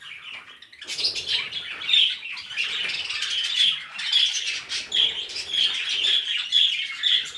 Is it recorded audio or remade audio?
recorded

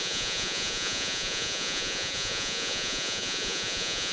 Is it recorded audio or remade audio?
remade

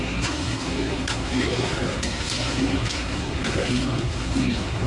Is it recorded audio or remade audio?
remade